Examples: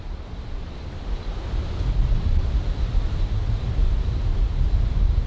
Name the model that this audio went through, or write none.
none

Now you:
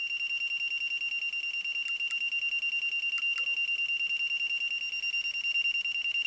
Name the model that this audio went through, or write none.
none